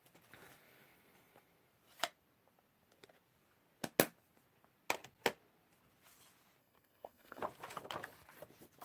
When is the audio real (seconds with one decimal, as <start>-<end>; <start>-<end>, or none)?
0.0-6.6; 7.4-8.8